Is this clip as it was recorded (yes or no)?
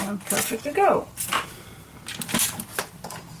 yes